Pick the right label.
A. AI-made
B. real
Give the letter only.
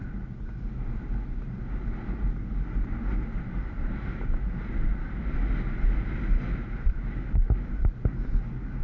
B